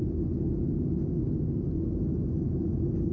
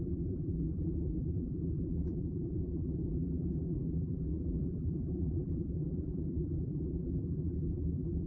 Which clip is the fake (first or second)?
second